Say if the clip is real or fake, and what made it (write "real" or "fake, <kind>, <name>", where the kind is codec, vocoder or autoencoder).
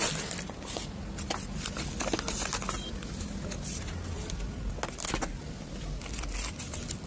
real